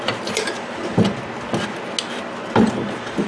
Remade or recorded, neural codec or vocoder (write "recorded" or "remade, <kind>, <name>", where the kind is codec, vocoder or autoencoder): recorded